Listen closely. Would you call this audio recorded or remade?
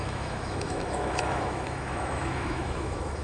remade